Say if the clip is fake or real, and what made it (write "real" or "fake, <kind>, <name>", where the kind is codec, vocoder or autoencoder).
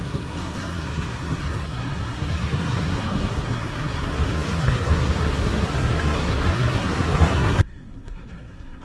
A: fake, codec, SNAC